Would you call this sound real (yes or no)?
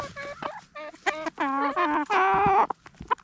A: yes